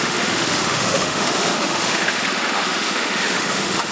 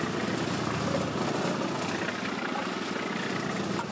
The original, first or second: second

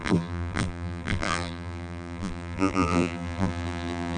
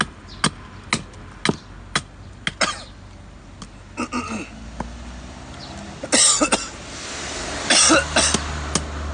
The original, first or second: second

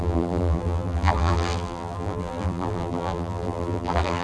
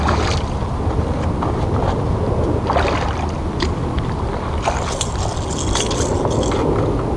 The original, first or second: second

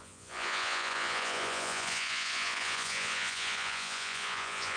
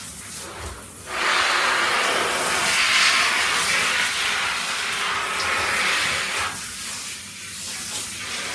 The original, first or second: second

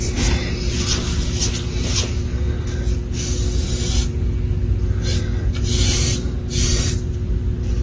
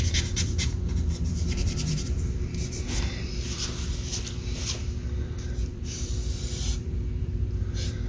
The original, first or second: first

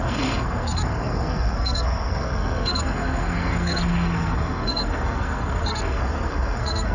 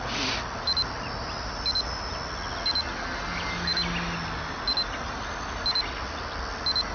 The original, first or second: second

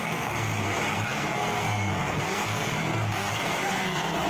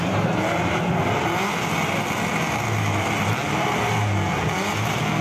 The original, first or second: second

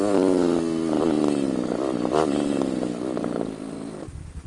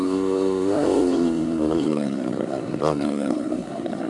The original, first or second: first